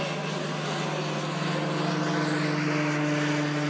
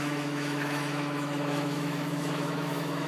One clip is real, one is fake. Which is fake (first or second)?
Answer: second